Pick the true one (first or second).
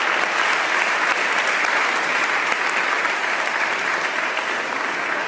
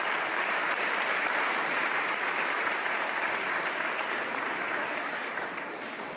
first